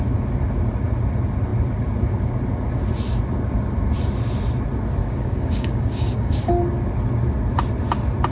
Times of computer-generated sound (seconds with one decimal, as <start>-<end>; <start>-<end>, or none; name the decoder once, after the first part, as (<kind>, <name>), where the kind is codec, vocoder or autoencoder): 5.0-6.5 (codec, DAC)